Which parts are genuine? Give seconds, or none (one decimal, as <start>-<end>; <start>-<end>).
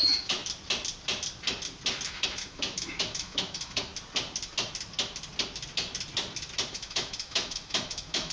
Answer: 0.4-2.1; 3.9-6.7